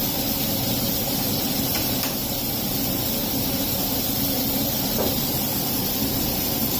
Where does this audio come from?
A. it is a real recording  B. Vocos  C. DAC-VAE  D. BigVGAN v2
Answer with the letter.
A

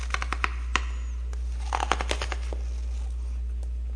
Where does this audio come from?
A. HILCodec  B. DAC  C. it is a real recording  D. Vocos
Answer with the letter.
C